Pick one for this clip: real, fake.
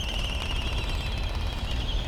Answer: real